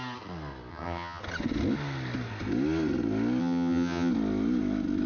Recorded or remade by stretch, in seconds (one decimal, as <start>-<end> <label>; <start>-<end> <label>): 0.0-0.7 recorded; 0.7-1.2 remade; 1.2-3.4 recorded; 3.4-4.1 remade; 4.1-5.1 recorded